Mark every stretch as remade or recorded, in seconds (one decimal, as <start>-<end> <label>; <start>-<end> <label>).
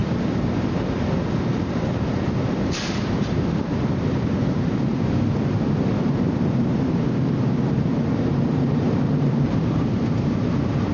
0.0-1.5 recorded; 1.5-10.9 remade